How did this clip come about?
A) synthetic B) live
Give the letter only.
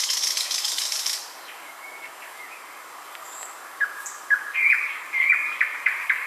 A